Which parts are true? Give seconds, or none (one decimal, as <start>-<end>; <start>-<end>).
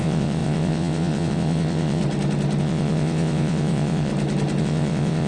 2.0-2.6; 4.1-4.6